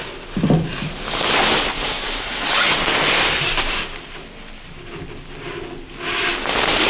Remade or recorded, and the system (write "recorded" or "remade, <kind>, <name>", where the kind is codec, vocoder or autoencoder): recorded